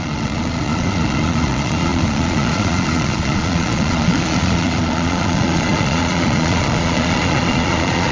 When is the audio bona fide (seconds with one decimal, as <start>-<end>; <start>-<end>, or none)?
none

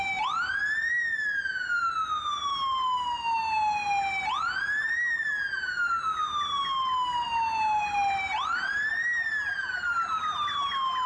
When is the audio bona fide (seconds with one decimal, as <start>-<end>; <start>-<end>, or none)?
0.0-11.1

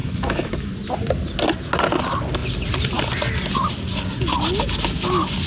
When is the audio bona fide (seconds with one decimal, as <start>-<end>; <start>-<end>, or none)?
0.7-5.5

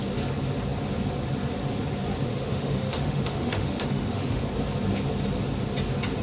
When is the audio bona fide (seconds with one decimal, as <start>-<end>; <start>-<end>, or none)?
0.0-2.3; 4.4-6.2

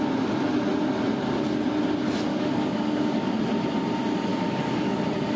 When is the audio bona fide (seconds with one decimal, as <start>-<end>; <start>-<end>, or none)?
0.0-2.3; 3.4-4.3; 5.0-5.4